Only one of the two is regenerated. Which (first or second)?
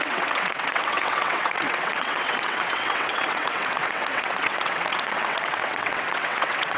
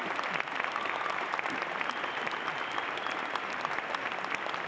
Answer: first